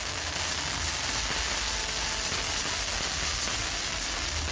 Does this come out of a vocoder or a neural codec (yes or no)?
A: no